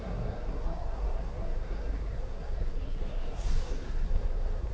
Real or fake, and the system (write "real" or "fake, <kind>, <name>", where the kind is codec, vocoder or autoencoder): fake, codec, SNAC